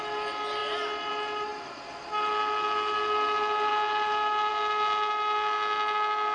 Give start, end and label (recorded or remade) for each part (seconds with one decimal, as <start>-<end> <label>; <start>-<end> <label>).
0.0-6.3 recorded